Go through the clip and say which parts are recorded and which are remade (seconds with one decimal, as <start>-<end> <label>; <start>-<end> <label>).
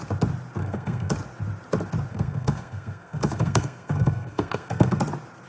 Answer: 0.0-0.6 recorded; 0.6-1.1 remade; 1.1-2.1 recorded; 2.1-5.0 remade; 5.0-5.5 recorded